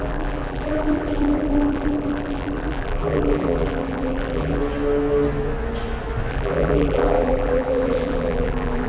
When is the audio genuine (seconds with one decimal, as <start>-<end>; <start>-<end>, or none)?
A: 4.6-6.3